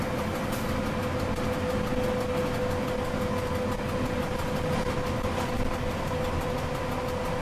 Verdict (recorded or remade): recorded